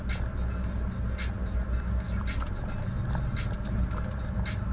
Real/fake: real